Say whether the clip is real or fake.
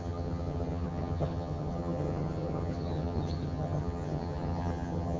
fake